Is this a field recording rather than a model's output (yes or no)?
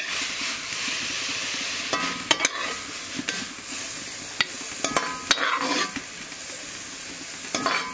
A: yes